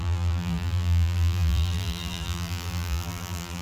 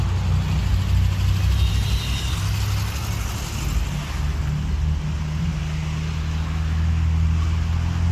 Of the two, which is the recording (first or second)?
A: second